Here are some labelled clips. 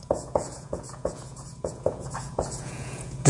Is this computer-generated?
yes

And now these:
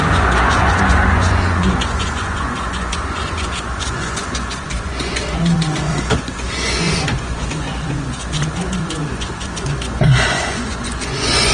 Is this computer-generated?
yes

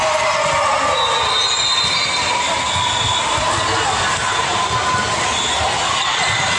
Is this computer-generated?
no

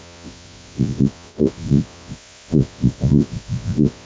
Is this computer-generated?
yes